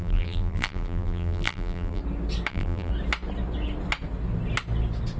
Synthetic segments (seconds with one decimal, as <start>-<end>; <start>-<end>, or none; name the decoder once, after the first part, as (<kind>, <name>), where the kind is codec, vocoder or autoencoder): 0.0-2.0 (vocoder, BigVGAN v2); 2.5-2.9